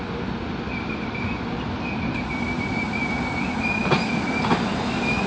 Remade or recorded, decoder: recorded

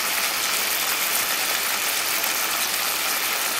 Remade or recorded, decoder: recorded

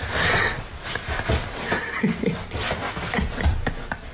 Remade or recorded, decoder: recorded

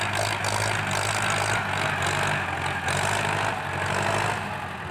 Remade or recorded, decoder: recorded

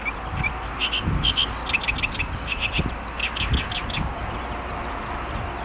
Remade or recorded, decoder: recorded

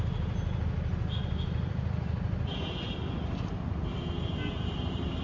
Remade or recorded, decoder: recorded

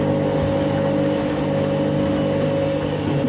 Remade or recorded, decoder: recorded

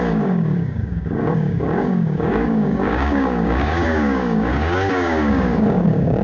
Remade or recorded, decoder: remade, codec, DAC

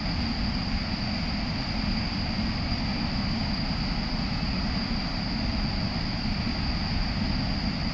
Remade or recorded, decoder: recorded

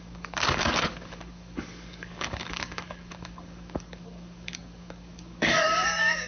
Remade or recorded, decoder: remade, codec, DAC